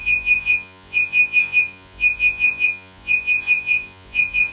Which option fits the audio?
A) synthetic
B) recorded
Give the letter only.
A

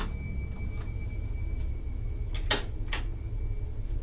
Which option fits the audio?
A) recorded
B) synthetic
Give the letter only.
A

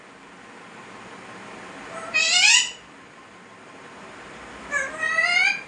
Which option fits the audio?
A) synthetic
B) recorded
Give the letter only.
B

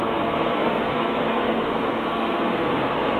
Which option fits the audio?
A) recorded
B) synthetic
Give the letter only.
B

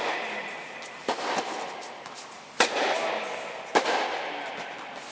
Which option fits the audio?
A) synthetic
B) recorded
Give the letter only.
B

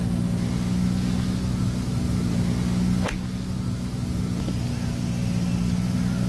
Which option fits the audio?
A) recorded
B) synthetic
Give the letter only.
A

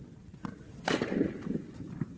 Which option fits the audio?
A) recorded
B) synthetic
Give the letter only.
B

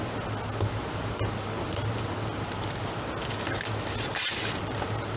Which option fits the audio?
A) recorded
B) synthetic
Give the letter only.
A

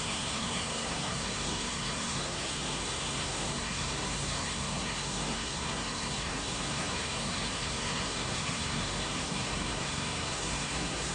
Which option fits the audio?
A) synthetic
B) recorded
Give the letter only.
A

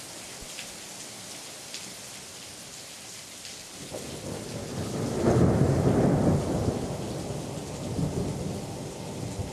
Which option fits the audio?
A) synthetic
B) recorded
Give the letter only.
B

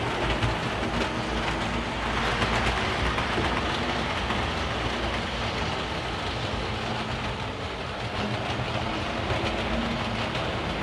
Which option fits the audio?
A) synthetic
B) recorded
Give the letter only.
B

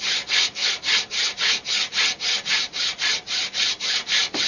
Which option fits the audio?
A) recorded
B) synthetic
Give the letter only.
A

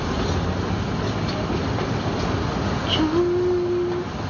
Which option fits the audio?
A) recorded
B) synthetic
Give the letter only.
A